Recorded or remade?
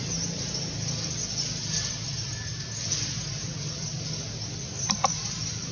recorded